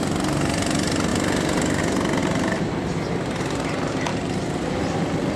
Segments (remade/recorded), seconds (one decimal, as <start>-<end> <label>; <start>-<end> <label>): 0.0-2.2 recorded; 2.2-2.7 remade; 2.7-4.1 recorded; 4.1-4.7 remade; 4.7-5.4 recorded

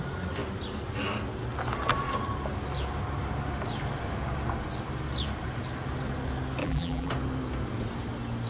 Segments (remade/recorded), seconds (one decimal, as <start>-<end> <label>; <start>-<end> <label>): 0.0-6.6 recorded; 6.6-7.1 remade; 7.1-8.5 recorded